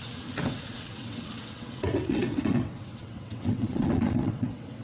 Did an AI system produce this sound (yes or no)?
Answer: yes